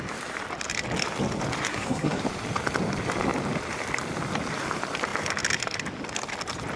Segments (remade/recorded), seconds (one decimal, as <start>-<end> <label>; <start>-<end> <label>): 0.0-1.7 recorded; 1.7-2.2 remade; 2.2-6.8 recorded